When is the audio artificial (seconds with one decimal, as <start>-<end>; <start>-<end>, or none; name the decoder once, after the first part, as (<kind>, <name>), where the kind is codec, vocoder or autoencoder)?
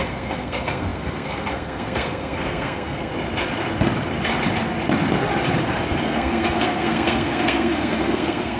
0.0-3.1 (codec, SNAC); 6.0-8.6